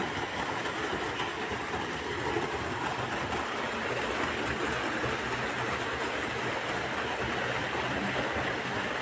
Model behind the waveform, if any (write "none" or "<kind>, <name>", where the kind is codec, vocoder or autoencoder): none